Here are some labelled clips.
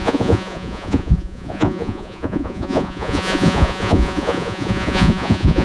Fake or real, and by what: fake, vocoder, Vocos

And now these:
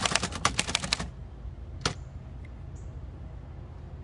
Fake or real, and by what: real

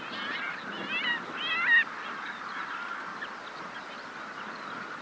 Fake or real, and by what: real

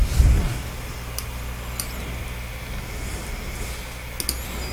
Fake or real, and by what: real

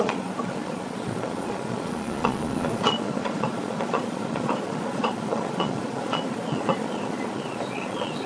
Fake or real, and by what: fake, vocoder, Vocos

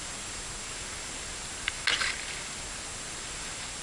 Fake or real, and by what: real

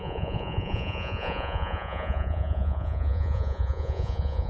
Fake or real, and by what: fake, vocoder, Vocos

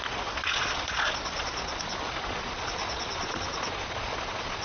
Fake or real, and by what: fake, vocoder, Vocos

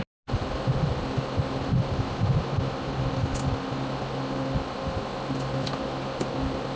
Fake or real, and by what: real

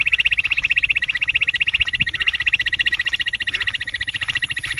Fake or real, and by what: real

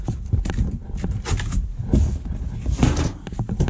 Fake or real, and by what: real